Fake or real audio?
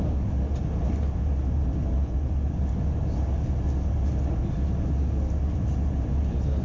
real